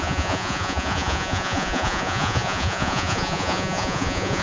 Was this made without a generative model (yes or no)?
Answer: no